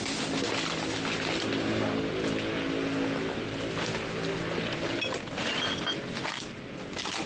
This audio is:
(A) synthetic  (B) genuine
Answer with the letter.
B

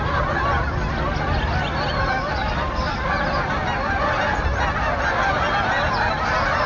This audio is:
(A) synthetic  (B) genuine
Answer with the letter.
B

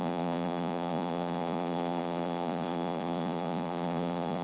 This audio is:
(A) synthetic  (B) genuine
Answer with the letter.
A